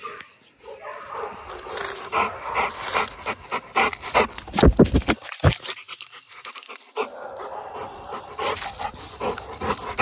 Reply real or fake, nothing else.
real